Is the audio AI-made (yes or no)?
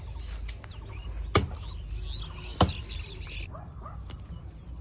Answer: no